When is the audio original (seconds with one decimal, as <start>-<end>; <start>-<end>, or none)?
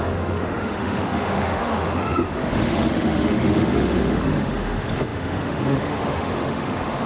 none